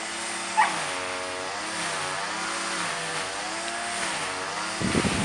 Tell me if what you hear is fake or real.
real